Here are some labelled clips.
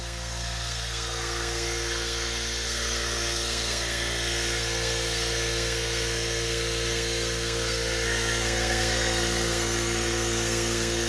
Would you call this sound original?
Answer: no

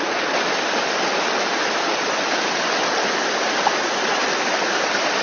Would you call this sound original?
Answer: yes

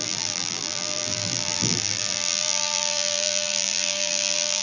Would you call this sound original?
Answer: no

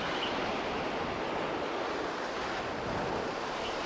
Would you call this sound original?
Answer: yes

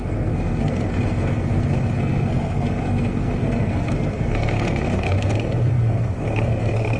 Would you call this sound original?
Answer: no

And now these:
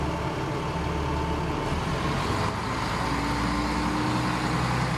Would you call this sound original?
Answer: yes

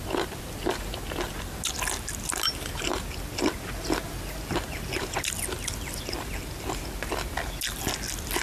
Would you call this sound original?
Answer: yes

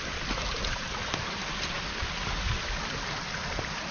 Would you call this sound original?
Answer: yes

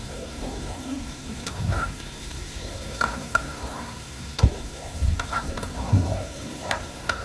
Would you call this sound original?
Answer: no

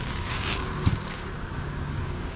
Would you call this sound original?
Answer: no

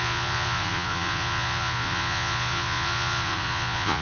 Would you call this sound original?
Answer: no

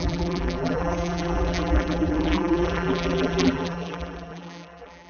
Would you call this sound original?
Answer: no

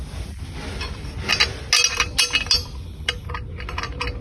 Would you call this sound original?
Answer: yes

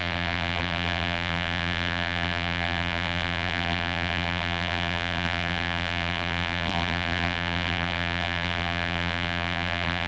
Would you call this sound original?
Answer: no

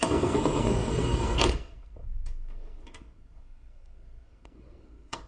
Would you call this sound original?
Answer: no